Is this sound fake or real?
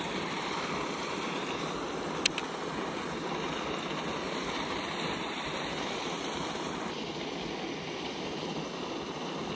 real